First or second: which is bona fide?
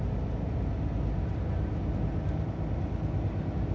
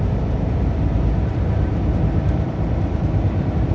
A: first